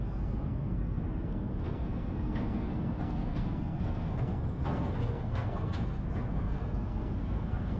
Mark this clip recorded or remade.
remade